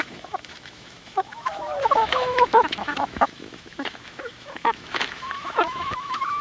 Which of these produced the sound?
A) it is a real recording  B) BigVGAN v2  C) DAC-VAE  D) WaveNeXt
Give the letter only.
C